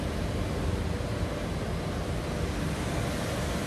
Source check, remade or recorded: recorded